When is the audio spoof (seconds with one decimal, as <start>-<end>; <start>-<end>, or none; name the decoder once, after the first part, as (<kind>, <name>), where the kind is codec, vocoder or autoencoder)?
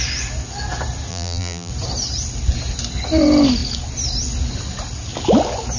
1.1-1.7 (vocoder, BigVGAN v2)